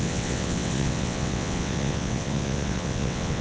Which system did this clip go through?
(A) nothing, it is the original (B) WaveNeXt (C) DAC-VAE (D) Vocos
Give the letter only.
B